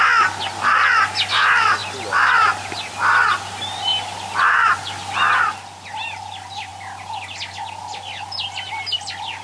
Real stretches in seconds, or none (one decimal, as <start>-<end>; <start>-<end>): 0.0-9.4